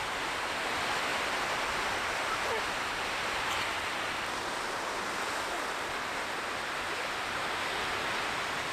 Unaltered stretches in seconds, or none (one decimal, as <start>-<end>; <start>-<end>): 0.0-8.7